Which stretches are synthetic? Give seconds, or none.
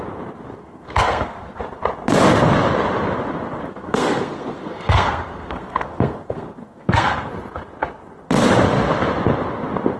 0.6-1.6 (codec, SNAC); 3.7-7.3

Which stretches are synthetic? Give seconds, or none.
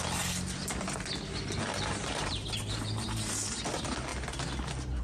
1.7-3.2 (vocoder, BigVGAN v2)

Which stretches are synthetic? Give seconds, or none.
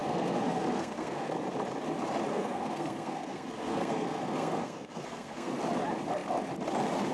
0.0-1.3 (codec, SNAC); 2.3-5.6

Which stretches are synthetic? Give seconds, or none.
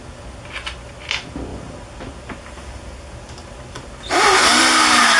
none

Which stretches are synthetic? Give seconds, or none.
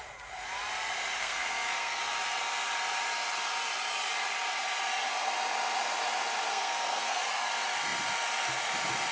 1.2-2.0 (codec, SNAC); 6.5-7.2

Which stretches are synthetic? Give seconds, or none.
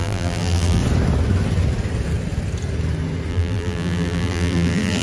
0.0-0.8 (vocoder, BigVGAN v2); 3.3-5.0